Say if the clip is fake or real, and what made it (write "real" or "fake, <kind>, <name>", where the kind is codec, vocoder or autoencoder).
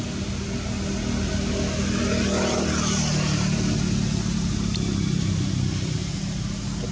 real